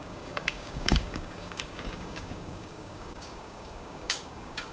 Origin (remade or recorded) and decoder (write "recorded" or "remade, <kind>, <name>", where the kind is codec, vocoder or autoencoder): remade, codec, DAC